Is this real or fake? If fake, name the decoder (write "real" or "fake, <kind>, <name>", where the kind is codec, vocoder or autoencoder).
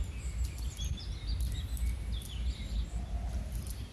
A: real